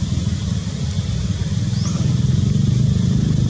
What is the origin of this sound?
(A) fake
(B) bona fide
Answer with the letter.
B